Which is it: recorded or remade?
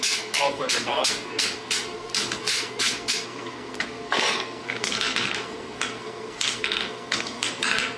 remade